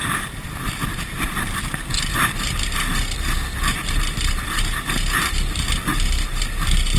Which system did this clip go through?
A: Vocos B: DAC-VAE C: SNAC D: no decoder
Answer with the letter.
D